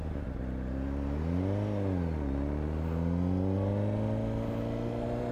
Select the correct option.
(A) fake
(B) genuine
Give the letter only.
B